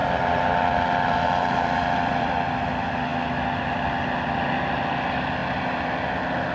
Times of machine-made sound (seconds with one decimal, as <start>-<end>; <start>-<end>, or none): 0.0-2.3; 5.4-6.1